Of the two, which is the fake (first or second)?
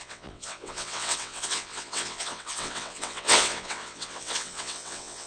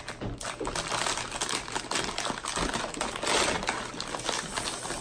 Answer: first